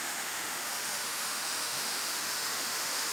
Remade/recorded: remade